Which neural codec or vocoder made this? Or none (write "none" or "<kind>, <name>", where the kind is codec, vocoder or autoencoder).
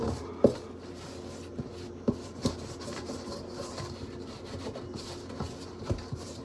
none